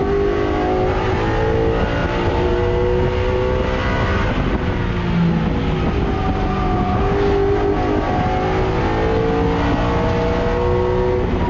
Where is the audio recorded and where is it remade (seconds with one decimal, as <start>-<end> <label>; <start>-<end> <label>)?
0.0-2.0 recorded; 2.0-2.5 remade; 2.5-11.5 recorded